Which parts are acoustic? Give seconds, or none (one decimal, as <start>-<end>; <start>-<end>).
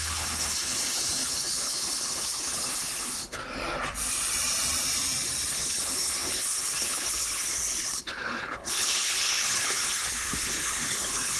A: 3.4-5.5